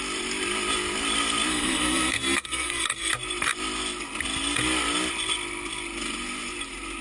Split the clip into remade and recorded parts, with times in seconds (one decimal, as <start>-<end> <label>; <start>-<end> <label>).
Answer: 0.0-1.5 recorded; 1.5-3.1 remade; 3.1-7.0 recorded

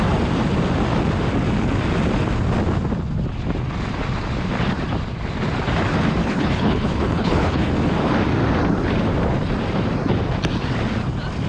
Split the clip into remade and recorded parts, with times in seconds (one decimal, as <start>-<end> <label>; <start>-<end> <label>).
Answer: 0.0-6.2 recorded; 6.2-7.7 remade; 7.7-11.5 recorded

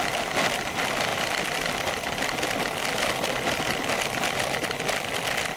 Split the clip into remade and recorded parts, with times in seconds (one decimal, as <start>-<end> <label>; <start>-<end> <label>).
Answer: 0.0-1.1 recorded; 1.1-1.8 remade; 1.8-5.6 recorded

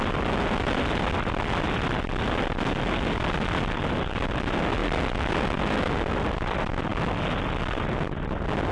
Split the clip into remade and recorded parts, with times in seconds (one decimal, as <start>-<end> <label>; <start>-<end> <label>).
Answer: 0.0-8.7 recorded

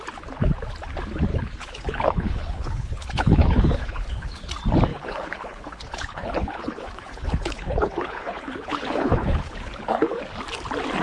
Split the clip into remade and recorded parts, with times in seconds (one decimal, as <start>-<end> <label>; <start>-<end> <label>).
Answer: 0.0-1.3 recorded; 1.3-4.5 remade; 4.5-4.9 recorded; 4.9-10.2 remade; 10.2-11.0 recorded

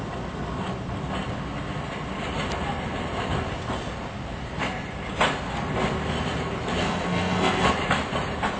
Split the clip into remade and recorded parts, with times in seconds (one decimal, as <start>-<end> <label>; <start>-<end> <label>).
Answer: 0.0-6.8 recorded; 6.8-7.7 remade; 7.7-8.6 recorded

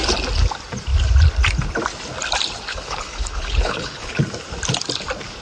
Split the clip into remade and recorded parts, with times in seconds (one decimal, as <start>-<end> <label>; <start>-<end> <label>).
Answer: 0.0-2.7 recorded; 2.7-4.1 remade; 4.1-5.4 recorded

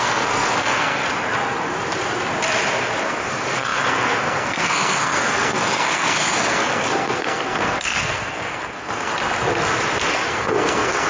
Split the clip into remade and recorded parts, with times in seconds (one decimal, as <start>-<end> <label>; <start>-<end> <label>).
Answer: 0.0-1.0 remade; 1.0-3.0 recorded; 3.0-9.1 remade; 9.1-10.1 recorded; 10.1-11.1 remade